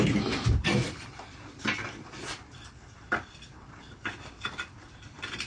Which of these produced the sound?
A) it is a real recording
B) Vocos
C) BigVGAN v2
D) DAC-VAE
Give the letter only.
C